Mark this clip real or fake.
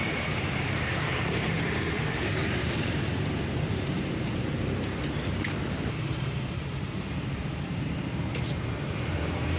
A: fake